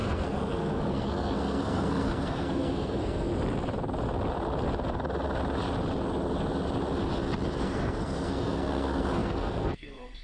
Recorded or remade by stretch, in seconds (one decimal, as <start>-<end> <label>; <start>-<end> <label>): 0.0-3.3 remade; 3.3-7.6 recorded; 7.6-10.2 remade